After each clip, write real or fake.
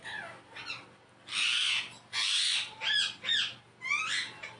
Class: real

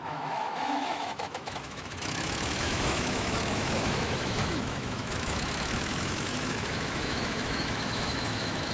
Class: fake